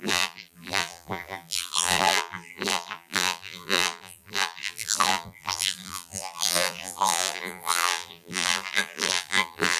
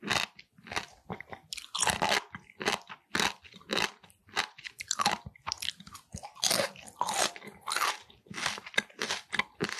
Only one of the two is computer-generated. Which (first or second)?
first